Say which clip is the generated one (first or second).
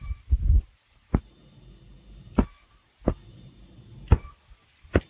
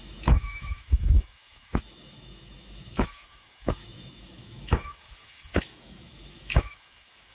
second